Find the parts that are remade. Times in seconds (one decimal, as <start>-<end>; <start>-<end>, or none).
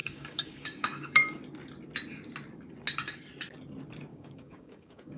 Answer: 0.0-1.4; 4.1-5.2